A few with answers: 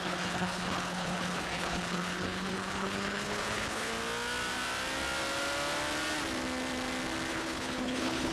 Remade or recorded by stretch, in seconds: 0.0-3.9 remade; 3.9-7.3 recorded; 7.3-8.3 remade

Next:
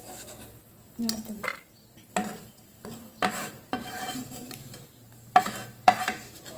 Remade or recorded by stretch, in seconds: 0.0-3.4 recorded; 3.4-6.6 remade

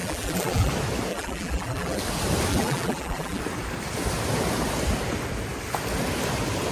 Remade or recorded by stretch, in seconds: 0.0-0.7 remade; 0.7-1.1 recorded; 1.1-2.0 remade; 2.0-2.5 recorded; 2.5-3.4 remade; 3.4-6.7 recorded

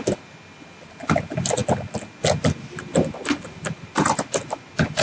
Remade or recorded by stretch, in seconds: 0.0-5.0 recorded

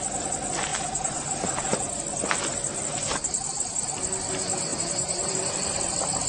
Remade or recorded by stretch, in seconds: 0.0-0.7 recorded; 0.7-2.0 remade; 2.0-4.7 recorded; 4.7-5.5 remade; 5.5-6.3 recorded

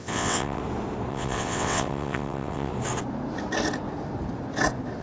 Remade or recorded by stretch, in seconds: 0.0-0.6 remade; 0.6-1.1 recorded; 1.1-2.7 remade; 2.7-5.0 recorded

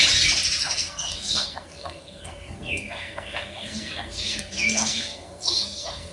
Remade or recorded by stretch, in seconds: 0.0-0.6 recorded; 0.6-6.1 remade

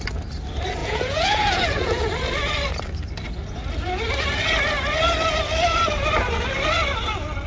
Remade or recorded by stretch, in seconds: 0.0-0.8 recorded; 0.8-2.1 remade; 2.1-7.5 recorded